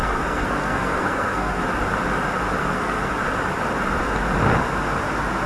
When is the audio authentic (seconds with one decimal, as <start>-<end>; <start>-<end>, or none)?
1.6-2.6; 3.1-5.5